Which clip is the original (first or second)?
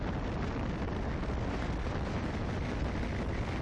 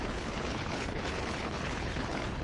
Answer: first